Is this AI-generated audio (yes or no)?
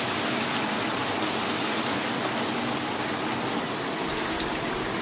no